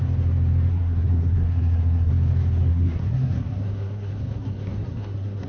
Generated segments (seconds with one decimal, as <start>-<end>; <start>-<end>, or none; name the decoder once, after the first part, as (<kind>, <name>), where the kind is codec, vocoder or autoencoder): 0.7-2.1 (codec, SNAC); 2.7-5.5